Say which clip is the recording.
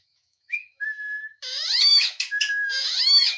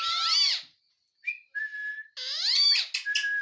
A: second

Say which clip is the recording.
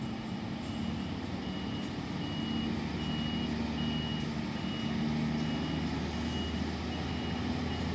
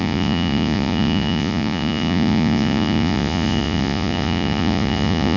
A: first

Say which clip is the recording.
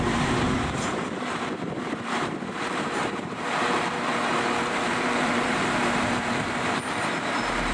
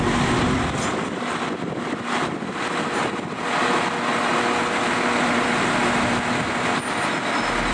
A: second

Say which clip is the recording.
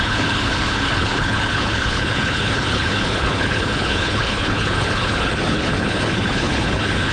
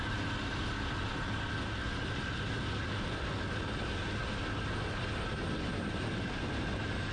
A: second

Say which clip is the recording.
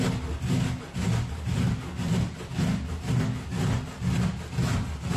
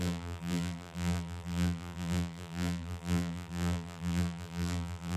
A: first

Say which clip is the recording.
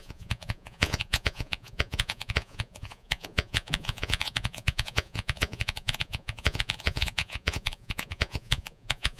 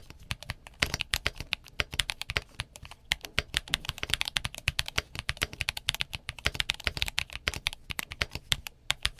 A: second